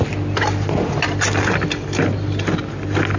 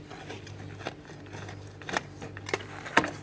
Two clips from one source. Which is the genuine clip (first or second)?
first